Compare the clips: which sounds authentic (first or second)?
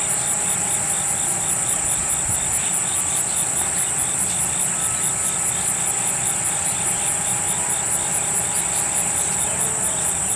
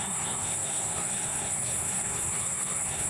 first